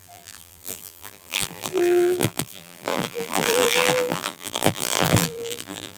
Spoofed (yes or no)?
yes